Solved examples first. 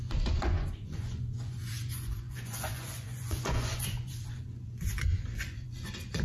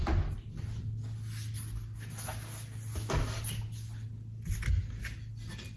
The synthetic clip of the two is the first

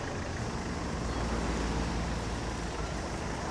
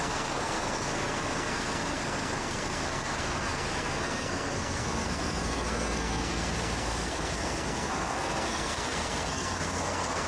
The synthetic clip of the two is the second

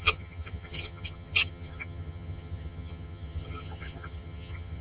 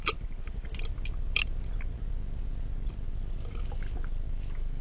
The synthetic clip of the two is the first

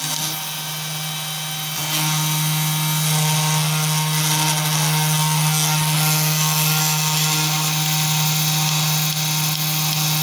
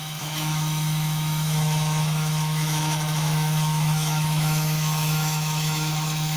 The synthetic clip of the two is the second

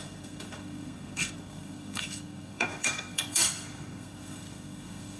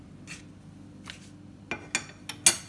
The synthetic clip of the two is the first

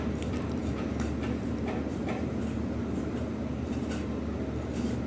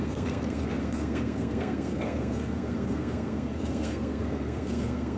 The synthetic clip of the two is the second